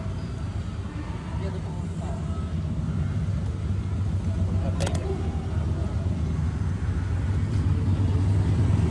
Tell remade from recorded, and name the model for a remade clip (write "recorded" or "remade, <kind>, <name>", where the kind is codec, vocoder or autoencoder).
recorded